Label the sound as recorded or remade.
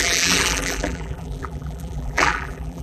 remade